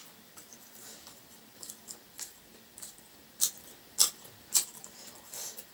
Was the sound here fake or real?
fake